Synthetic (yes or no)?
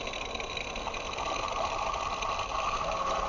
no